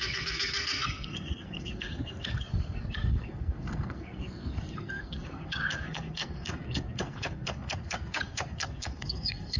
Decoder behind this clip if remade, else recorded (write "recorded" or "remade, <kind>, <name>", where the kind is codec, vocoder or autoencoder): remade, codec, SNAC